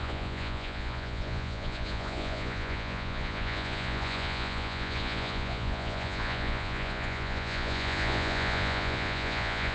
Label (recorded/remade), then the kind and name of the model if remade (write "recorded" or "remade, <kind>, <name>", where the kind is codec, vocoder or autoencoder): remade, vocoder, Vocos